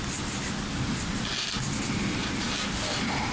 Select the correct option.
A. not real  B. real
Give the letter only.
B